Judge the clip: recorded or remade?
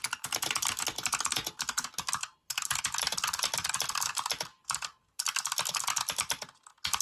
recorded